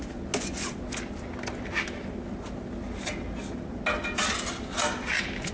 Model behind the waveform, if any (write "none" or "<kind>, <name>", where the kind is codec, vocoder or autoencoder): none